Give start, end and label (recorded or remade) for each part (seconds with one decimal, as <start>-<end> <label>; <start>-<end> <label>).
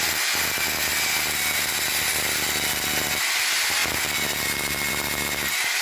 0.0-5.8 recorded